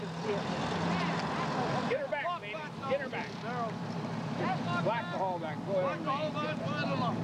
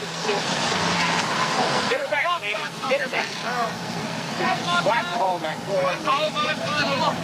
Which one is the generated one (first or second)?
second